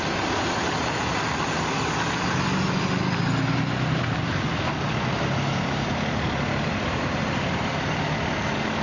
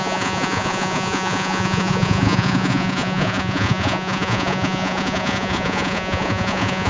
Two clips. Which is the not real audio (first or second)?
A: second